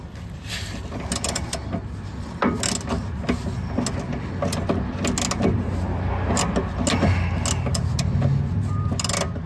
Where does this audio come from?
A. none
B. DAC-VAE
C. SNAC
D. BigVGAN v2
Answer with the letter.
A